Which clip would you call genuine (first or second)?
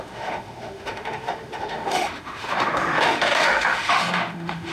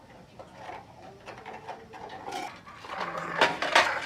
second